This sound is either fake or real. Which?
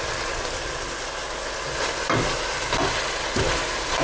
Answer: real